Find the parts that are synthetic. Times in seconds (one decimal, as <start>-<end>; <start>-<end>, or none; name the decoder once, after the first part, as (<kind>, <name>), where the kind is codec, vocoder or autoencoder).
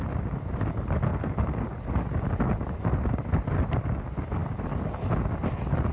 none